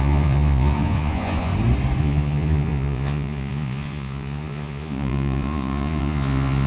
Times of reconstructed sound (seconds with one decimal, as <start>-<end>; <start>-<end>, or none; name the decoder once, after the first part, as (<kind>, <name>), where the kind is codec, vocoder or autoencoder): 0.0-1.5 (vocoder, Vocos); 2.0-6.7